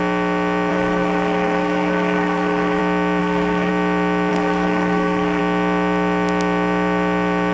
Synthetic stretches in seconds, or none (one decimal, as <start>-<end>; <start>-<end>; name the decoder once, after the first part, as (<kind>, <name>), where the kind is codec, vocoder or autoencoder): 0.7-2.8 (codec, SNAC); 3.2-3.7; 4.3-5.4